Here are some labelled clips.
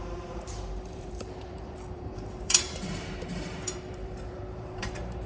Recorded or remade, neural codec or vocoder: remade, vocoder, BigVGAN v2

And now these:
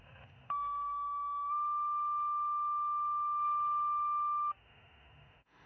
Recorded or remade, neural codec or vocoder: remade, autoencoder, DAC-VAE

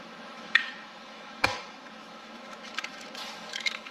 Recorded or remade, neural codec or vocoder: remade, autoencoder, DAC-VAE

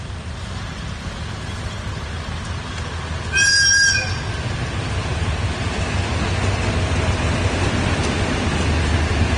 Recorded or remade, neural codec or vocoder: recorded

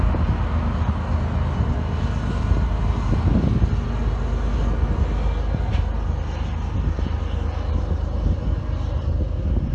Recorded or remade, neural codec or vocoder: recorded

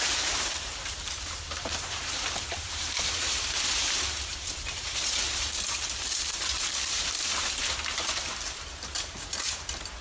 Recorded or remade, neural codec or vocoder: remade, vocoder, BigVGAN v2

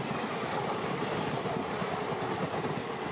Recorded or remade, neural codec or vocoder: recorded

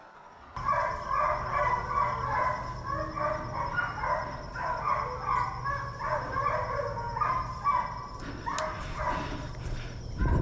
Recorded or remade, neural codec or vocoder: recorded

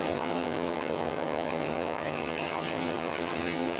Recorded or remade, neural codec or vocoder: remade, vocoder, HiFi-GAN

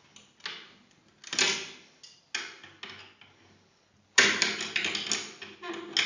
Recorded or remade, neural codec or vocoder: recorded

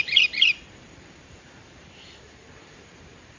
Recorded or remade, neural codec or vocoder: remade, vocoder, BigVGAN v2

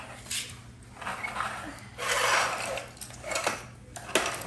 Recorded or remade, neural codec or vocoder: recorded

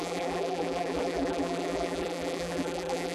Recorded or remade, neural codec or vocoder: remade, vocoder, BigVGAN v2